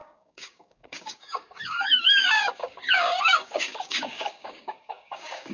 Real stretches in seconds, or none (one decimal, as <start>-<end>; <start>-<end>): none